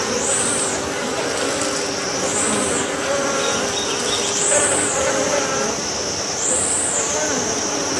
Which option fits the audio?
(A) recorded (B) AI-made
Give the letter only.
A